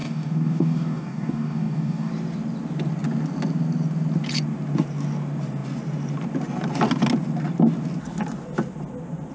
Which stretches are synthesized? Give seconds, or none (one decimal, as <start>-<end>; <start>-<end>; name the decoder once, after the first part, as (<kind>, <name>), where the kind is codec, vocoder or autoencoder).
0.0-2.1 (codec, DAC)